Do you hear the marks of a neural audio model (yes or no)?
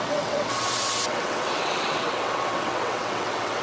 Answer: yes